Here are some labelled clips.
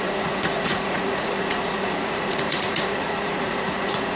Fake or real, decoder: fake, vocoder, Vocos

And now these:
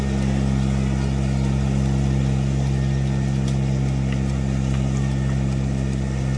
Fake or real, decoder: real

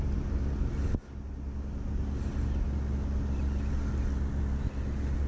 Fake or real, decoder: real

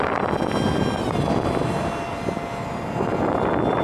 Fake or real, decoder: real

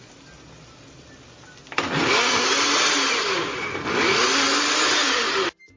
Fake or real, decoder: real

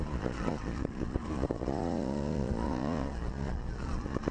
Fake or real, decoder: fake, vocoder, Vocos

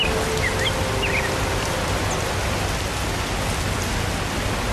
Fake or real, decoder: real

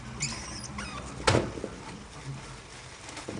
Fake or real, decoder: real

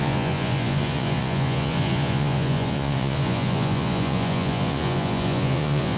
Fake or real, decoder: fake, vocoder, Vocos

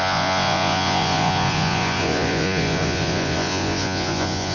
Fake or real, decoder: fake, vocoder, Vocos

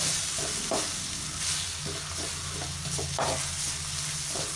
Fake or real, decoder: real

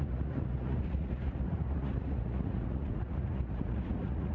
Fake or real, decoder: fake, vocoder, Vocos